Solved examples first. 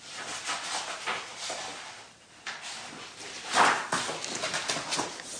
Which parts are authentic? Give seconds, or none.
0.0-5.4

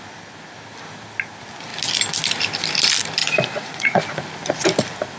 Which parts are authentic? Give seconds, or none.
0.0-3.2; 4.0-5.2

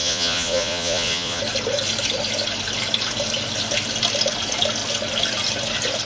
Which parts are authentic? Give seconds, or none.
1.4-6.1

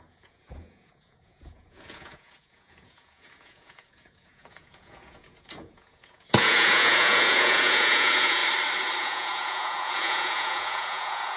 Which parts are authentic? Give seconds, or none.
8.4-9.0

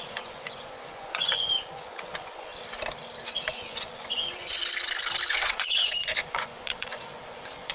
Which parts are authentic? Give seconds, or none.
2.5-3.5; 4.6-5.3